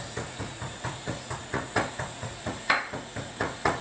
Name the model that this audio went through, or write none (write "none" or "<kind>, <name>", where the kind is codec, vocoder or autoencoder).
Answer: vocoder, Vocos